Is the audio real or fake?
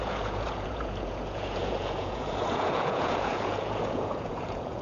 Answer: fake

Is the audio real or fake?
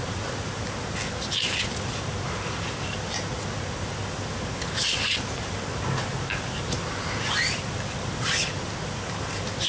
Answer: real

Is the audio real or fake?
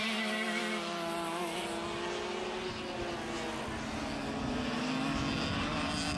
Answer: real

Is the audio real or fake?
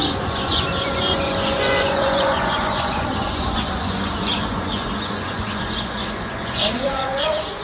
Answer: fake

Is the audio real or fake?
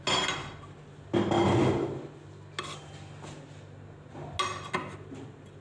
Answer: real